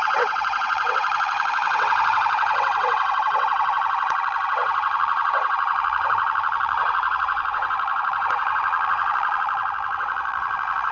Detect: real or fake fake